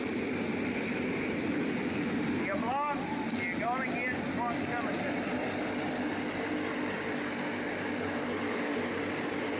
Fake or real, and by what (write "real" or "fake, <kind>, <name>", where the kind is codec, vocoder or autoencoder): real